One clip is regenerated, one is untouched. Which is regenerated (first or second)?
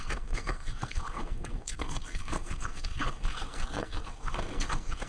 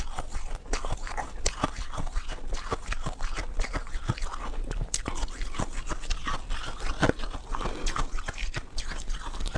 first